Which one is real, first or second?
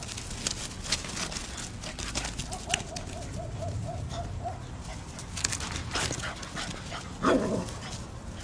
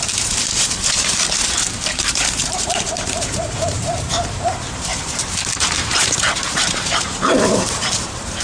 first